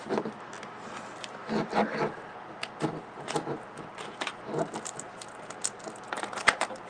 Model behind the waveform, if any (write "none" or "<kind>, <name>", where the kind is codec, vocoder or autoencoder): none